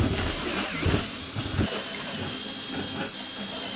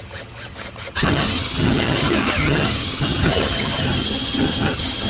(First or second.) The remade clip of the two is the second